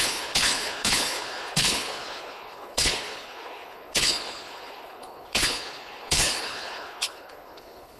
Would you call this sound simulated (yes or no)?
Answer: yes